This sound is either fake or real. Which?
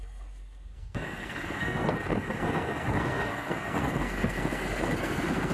fake